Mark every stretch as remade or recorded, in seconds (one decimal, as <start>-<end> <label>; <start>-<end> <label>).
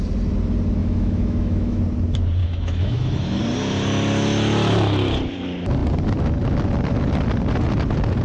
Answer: 0.0-0.8 recorded; 0.8-1.8 remade; 1.8-2.4 recorded; 2.4-3.4 remade; 3.4-8.2 recorded